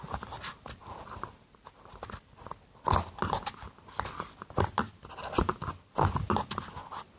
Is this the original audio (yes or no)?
yes